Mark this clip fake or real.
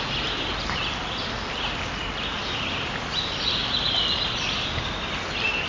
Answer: real